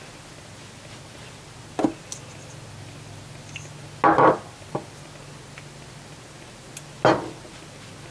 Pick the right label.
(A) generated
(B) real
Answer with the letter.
B